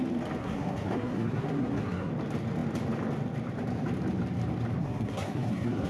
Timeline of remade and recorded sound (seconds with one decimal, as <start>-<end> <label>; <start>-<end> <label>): 0.0-0.4 recorded; 0.4-2.1 remade; 2.1-4.8 recorded; 4.8-5.9 remade